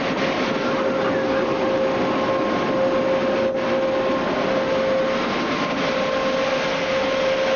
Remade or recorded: recorded